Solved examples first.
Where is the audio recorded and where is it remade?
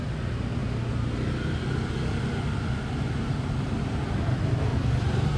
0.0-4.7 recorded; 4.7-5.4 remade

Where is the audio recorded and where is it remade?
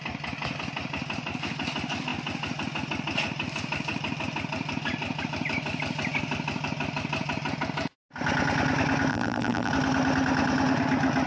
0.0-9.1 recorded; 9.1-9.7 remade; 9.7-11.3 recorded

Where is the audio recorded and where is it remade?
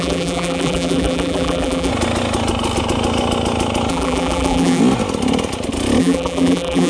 0.0-1.9 remade; 1.9-3.9 recorded; 3.9-4.8 remade; 4.8-6.0 recorded; 6.0-6.9 remade